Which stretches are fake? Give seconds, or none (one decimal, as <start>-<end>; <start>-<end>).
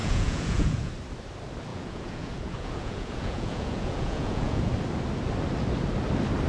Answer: 0.0-0.9; 1.7-4.7